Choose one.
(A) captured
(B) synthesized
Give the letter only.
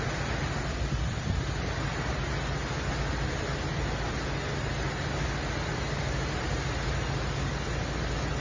A